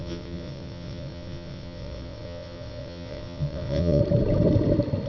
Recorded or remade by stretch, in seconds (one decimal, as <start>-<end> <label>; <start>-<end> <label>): 0.0-4.0 remade; 4.0-5.1 recorded